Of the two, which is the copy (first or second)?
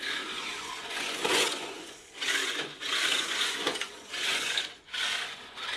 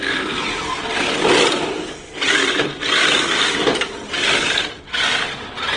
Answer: first